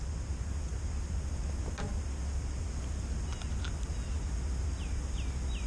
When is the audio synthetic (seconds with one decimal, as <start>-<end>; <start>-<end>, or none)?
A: none